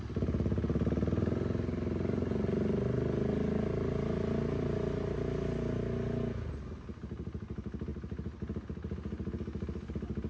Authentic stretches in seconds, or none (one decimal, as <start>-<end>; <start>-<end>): 0.0-10.3